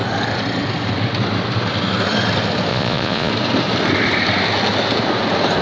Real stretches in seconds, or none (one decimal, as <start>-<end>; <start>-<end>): 0.0-2.7; 3.3-5.6